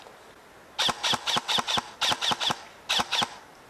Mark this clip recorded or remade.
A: recorded